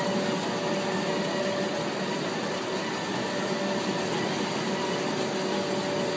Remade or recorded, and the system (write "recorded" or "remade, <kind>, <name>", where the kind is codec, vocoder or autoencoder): recorded